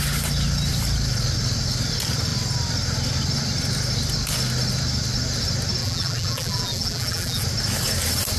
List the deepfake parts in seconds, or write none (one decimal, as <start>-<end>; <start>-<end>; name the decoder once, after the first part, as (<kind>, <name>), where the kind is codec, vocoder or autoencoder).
5.8-7.4 (vocoder, BigVGAN v2)